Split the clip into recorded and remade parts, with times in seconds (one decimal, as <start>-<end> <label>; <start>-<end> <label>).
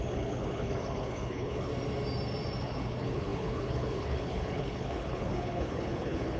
0.0-1.7 remade; 1.7-2.6 recorded; 2.6-6.4 remade